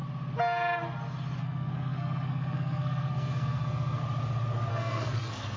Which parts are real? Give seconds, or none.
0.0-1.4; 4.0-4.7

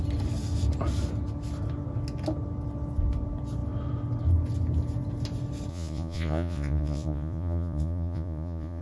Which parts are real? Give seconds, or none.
0.0-5.7

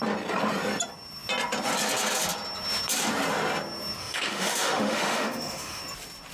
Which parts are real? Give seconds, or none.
0.0-4.0; 5.8-6.3

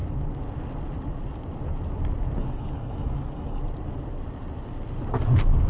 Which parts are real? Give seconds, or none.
0.0-2.4; 3.6-5.7

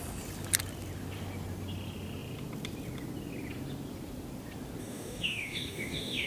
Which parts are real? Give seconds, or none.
0.0-4.8

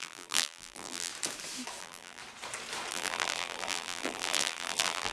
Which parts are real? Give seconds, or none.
1.1-1.8; 2.2-2.9

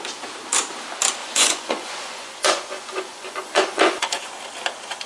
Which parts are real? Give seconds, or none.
0.0-1.2; 4.3-5.1

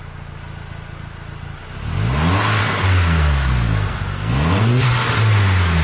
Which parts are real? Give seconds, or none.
0.0-2.6; 4.9-5.8